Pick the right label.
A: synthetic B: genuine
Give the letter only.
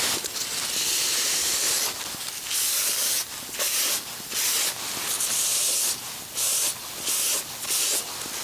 B